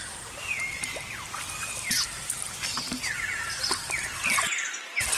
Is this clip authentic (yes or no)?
no